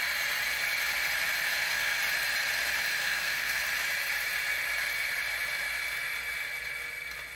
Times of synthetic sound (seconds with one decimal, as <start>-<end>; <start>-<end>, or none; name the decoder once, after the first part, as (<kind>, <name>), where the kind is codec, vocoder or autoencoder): 1.5-2.0 (codec, SNAC); 3.0-3.6